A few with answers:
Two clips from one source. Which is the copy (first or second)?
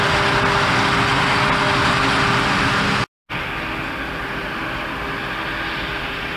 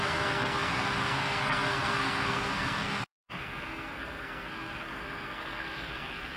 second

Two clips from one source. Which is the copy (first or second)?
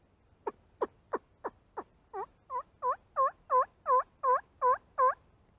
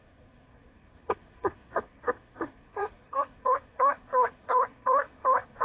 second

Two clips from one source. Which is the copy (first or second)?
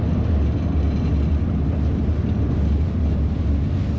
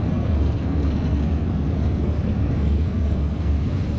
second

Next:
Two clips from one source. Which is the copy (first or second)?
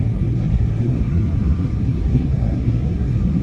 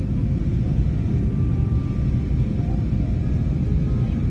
first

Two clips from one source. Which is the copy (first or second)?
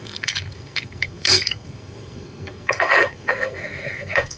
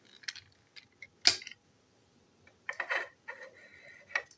first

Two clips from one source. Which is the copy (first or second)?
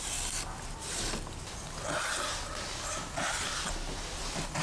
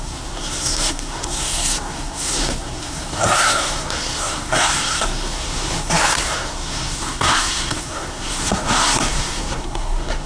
second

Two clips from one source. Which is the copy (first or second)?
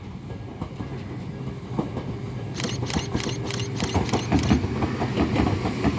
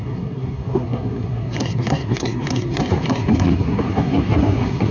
second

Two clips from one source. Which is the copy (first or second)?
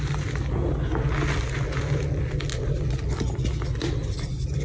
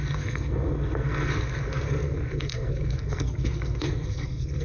second